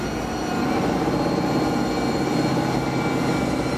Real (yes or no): yes